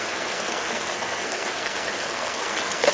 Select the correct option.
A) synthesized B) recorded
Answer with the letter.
A